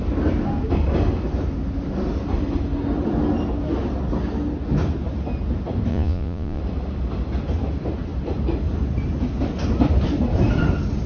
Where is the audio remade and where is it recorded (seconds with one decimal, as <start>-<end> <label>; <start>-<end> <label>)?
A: 0.0-5.9 recorded; 5.9-6.6 remade; 6.6-11.1 recorded